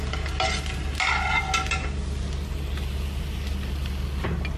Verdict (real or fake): real